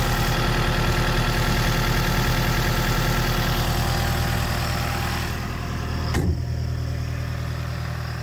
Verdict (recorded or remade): recorded